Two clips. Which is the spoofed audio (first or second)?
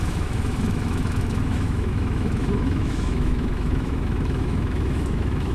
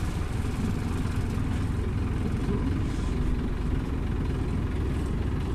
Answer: first